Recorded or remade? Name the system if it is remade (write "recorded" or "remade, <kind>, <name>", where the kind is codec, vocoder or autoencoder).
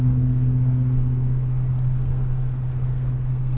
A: remade, codec, SNAC